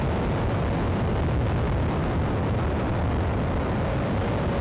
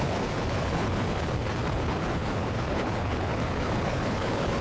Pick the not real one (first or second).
second